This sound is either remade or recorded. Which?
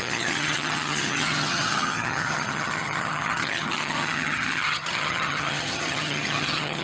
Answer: remade